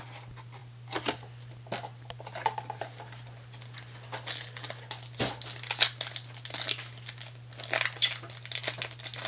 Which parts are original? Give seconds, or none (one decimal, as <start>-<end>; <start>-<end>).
0.0-9.3